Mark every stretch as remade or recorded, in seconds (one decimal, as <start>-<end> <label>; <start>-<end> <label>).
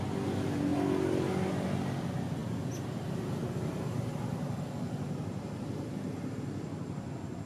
0.0-7.5 recorded